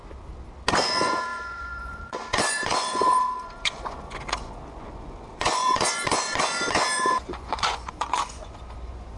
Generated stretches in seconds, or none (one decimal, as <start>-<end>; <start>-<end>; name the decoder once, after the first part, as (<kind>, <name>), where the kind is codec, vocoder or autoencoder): 0.8-9.2 (vocoder, Vocos)